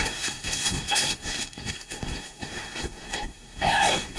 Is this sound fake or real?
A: fake